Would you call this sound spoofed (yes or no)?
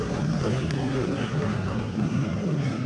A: yes